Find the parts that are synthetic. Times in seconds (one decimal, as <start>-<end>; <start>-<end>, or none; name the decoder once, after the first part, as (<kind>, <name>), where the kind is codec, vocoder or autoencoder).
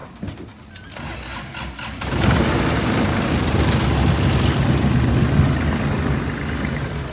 none